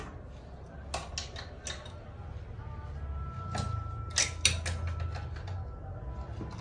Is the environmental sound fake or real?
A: real